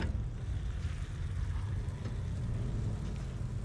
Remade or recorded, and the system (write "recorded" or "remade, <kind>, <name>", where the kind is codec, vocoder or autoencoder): recorded